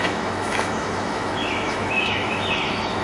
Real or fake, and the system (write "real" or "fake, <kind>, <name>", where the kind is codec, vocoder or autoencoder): fake, autoencoder, DAC-VAE